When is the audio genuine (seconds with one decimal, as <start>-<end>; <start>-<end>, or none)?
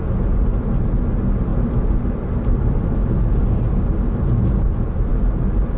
0.0-1.5; 3.1-5.1